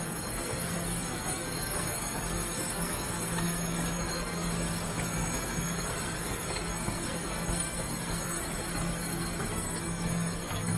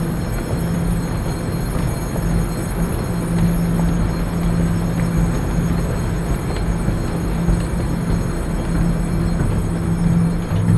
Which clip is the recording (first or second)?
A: second